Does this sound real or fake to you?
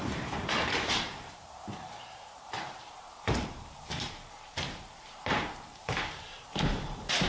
fake